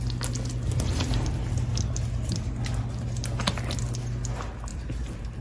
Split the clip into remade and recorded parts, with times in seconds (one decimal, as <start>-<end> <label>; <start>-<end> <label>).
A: 0.0-4.7 recorded; 4.7-5.4 remade